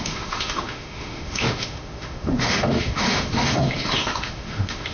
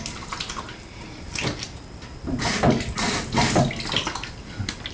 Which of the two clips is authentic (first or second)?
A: second